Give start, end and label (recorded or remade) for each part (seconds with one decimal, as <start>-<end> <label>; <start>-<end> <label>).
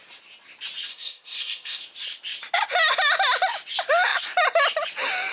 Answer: 0.0-0.9 recorded; 0.9-1.8 remade; 1.8-5.3 recorded